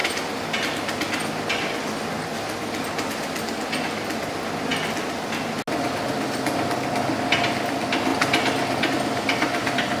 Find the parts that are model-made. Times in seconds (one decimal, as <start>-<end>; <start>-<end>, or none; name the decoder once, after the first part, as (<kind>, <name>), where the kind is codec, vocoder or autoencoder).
8.1-8.9 (vocoder, BigVGAN v2)